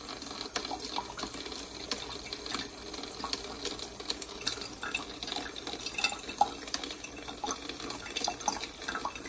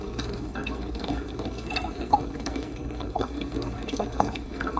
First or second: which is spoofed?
second